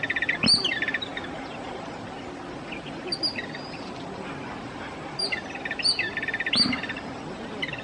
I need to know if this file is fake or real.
real